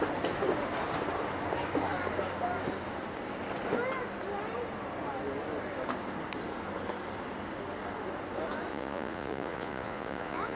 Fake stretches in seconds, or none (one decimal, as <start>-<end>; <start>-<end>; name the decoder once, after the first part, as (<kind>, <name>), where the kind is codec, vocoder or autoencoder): 8.7-10.6 (vocoder, Vocos)